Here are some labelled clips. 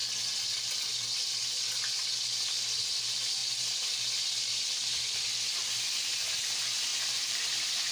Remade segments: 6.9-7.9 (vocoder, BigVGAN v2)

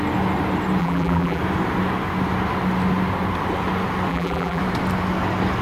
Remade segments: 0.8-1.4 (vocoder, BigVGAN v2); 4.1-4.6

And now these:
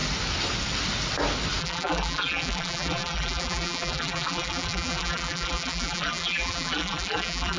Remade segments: 1.6-7.6 (vocoder, BigVGAN v2)

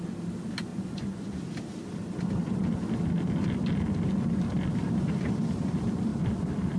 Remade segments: 0.7-1.4 (vocoder, Vocos)

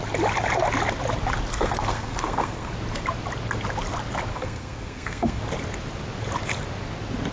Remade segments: 1.5-2.7 (codec, SNAC); 4.3-5.4